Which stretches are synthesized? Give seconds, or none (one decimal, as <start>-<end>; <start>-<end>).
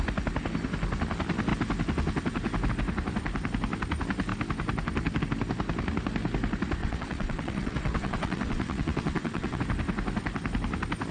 6.8-9.6